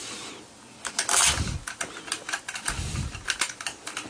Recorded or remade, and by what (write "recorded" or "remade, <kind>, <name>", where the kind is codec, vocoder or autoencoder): recorded